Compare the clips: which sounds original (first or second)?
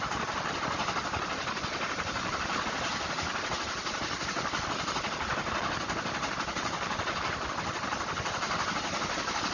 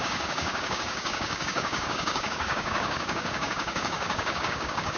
first